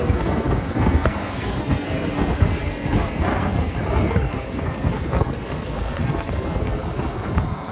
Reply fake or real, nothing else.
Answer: fake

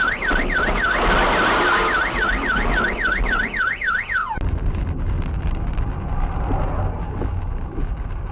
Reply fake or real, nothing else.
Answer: real